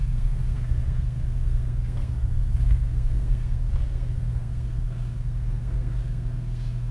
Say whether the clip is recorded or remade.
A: remade